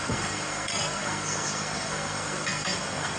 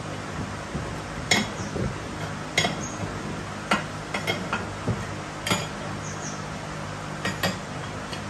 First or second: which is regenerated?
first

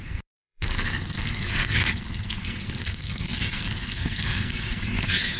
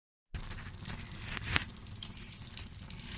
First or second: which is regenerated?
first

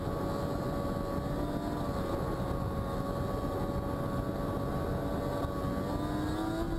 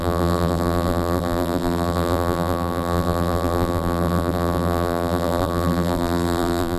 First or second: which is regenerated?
second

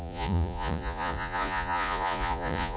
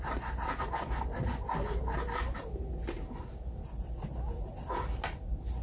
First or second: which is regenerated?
first